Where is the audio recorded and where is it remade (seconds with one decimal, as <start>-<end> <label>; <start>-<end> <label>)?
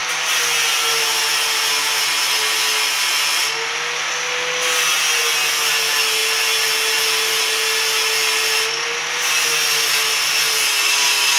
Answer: 0.0-11.4 recorded